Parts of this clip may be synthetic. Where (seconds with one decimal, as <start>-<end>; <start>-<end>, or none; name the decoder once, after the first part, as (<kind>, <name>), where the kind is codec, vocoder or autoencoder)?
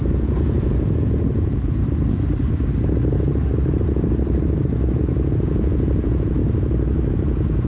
0.0-1.8 (vocoder, Vocos); 5.0-6.4; 7.1-7.7